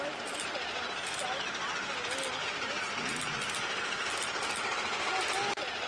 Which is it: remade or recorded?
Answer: recorded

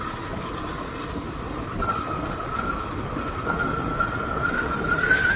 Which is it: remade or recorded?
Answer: recorded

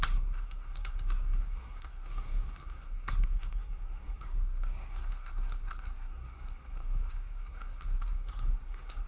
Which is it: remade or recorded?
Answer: remade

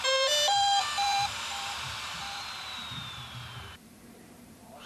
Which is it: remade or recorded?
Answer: remade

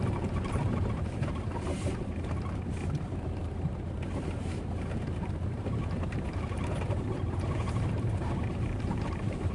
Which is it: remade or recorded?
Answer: remade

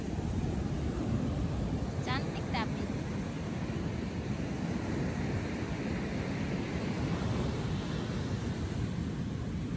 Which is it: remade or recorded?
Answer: recorded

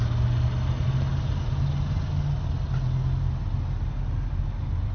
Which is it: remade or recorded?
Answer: recorded